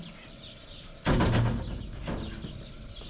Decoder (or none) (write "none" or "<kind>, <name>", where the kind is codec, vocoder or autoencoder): none